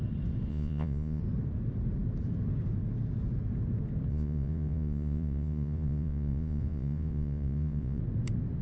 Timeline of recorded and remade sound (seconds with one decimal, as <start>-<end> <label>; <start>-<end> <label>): 0.0-0.5 recorded; 0.5-1.2 remade; 1.2-4.1 recorded; 4.1-8.0 remade; 8.0-8.6 recorded